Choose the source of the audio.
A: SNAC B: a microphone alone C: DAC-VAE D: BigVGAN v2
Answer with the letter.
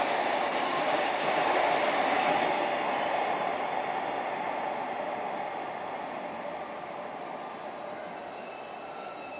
B